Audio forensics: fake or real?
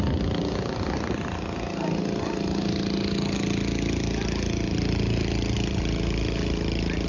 real